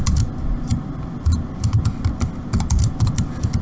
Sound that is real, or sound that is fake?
real